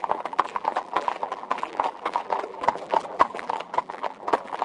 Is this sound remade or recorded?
remade